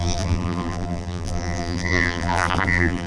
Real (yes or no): no